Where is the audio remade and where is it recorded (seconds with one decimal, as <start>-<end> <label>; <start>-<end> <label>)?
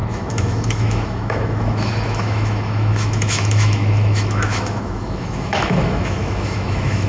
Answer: 0.0-7.1 remade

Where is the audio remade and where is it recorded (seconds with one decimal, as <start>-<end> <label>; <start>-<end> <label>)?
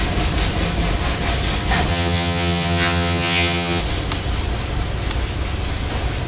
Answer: 0.0-1.9 recorded; 1.9-3.8 remade; 3.8-6.3 recorded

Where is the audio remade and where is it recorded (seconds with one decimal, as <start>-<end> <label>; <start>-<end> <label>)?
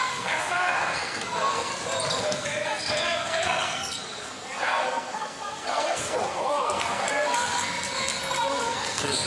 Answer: 0.0-1.7 remade; 1.7-2.2 recorded; 2.2-9.3 remade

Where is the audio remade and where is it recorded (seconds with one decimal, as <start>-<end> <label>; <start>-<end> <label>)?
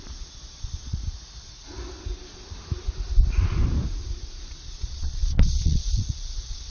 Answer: 0.0-1.0 remade; 1.0-4.5 recorded; 4.5-6.7 remade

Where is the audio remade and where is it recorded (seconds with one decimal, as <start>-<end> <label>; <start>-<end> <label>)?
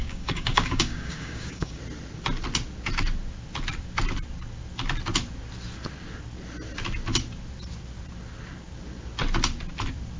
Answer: 0.0-1.8 remade; 1.8-10.2 recorded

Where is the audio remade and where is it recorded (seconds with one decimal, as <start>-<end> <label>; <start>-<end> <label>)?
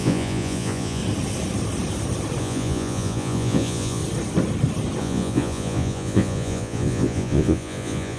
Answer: 0.0-1.0 remade; 1.0-2.4 recorded; 2.4-4.0 remade; 4.0-5.0 recorded; 5.0-8.2 remade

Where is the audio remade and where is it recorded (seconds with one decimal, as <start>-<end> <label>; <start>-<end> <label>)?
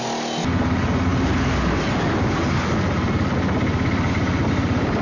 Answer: 0.0-5.0 recorded